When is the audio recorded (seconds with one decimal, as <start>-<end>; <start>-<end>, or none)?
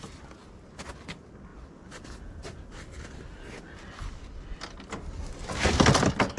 0.0-6.4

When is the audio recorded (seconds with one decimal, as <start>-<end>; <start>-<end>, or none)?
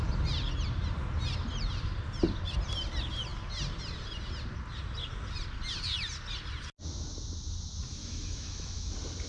0.0-8.0; 8.9-9.3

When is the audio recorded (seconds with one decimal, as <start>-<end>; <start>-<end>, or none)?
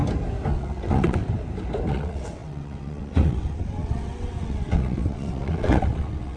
0.0-0.5; 1.2-1.9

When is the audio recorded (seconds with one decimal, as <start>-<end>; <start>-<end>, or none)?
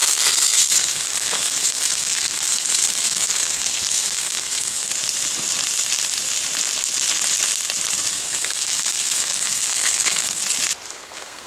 4.9-8.1; 10.4-10.9